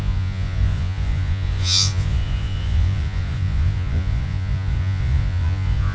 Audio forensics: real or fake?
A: fake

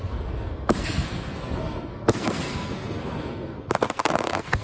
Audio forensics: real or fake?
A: fake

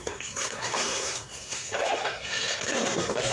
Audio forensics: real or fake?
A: fake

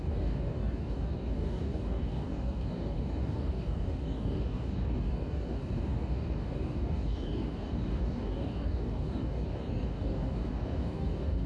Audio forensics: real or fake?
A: fake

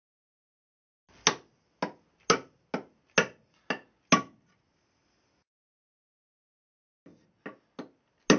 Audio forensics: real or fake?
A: real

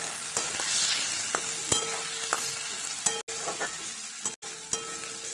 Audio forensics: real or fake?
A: real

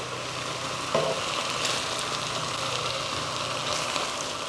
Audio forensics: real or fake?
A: real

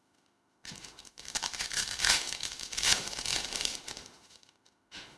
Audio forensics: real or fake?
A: fake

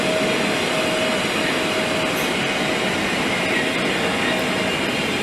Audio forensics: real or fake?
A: real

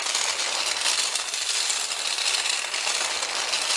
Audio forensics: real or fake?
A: real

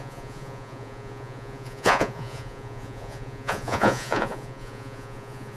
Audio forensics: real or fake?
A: fake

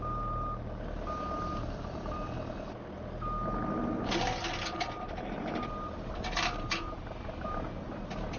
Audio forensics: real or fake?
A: real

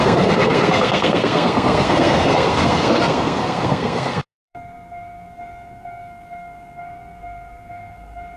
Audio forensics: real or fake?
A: fake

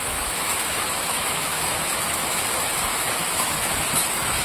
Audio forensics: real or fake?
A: fake